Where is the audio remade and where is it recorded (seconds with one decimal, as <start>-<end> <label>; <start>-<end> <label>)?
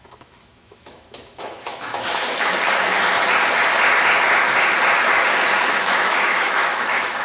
0.0-2.5 remade; 2.5-5.7 recorded; 5.7-7.2 remade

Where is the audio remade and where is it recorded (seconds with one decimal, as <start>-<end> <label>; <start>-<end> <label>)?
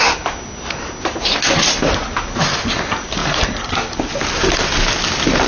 0.0-5.5 recorded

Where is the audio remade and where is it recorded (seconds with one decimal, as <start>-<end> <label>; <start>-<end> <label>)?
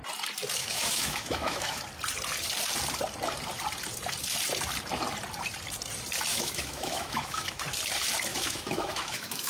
0.0-0.6 recorded; 0.6-1.8 remade; 1.8-6.3 recorded; 6.3-7.6 remade; 7.6-8.3 recorded; 8.3-9.5 remade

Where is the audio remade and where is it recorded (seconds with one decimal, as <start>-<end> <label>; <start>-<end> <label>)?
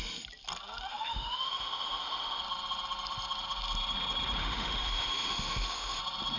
0.0-0.9 recorded; 0.9-2.4 remade; 2.4-4.4 recorded; 4.4-6.0 remade; 6.0-6.4 recorded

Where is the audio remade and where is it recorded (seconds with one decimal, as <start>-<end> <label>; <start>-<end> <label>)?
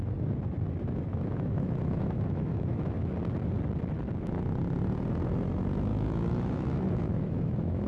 0.0-1.1 recorded; 1.1-2.9 remade; 2.9-5.9 recorded; 5.9-7.9 remade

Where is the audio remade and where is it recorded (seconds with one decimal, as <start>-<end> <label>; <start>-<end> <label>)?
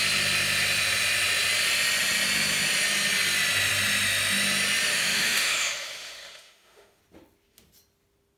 0.0-4.9 recorded; 4.9-7.0 remade; 7.0-8.4 recorded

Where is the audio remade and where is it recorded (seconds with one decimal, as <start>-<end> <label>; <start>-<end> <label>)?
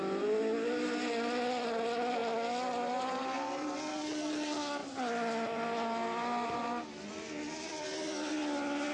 0.0-8.9 recorded